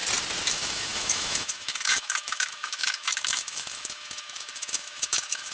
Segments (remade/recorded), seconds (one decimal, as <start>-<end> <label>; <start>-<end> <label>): 0.0-0.5 recorded; 0.5-5.5 remade